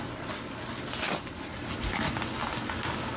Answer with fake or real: real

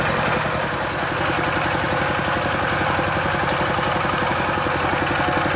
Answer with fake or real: real